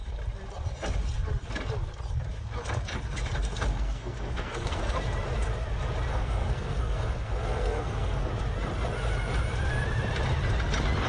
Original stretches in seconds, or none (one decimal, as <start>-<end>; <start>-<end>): 0.0-3.7; 4.9-6.1; 8.3-11.1